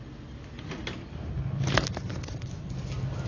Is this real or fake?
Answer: real